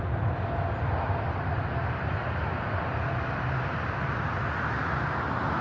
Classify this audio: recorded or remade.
recorded